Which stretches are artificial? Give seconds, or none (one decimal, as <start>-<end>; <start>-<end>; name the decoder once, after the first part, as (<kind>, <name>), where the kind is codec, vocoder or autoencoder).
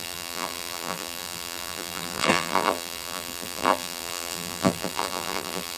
0.0-5.8 (vocoder, BigVGAN v2)